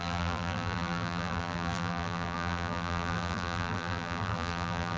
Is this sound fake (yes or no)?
yes